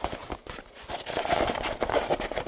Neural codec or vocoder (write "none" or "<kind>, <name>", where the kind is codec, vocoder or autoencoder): none